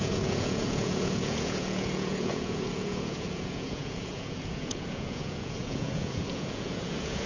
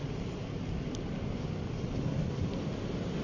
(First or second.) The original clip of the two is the second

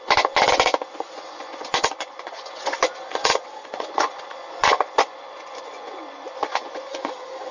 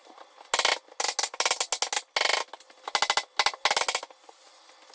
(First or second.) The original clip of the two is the second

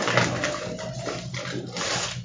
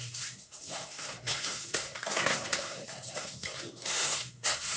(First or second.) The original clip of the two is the first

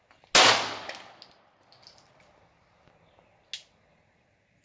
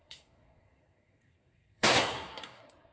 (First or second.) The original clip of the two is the first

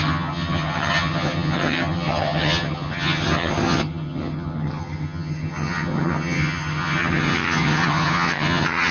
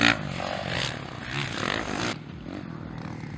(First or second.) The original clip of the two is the second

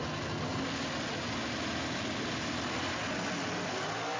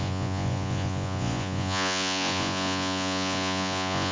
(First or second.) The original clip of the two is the first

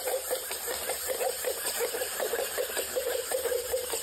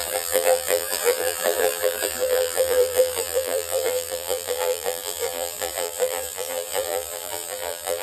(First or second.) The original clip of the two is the first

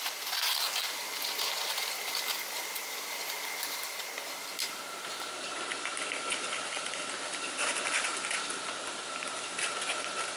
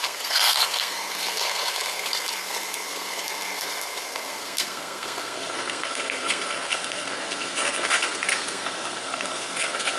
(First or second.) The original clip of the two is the first